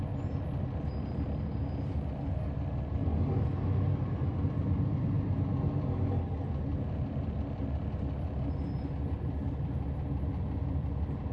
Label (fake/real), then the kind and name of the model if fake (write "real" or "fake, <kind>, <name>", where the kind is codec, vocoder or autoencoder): real